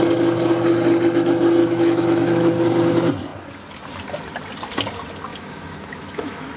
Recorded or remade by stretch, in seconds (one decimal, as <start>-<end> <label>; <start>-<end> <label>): 0.0-1.6 recorded; 1.6-2.5 remade; 2.5-5.3 recorded; 5.3-6.6 remade